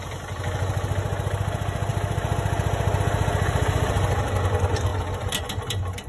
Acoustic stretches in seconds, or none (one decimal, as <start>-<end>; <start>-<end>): 0.0-6.1